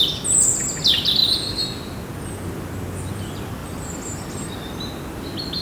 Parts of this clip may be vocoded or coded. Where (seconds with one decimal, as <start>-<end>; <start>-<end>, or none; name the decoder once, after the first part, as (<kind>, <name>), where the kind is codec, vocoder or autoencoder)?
3.6-4.5 (vocoder, BigVGAN v2)